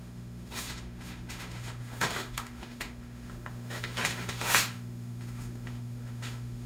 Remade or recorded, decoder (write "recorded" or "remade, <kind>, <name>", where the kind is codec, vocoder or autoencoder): remade, autoencoder, DAC-VAE